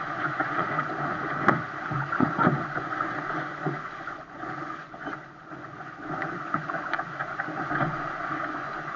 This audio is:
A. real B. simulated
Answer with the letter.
B